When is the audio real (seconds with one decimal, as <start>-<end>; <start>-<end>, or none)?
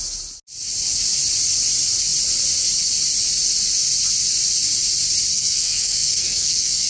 0.0-5.3